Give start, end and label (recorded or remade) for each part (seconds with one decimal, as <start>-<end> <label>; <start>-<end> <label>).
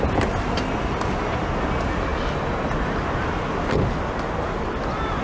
0.0-5.2 recorded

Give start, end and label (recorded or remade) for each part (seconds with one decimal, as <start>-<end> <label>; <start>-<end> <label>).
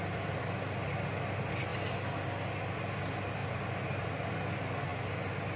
0.0-5.6 recorded